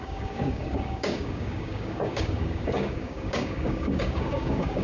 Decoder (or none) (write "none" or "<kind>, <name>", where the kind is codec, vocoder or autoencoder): codec, DAC